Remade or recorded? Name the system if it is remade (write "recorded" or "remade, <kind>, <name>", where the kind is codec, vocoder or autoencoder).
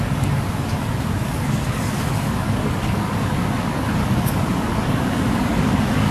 remade, codec, DAC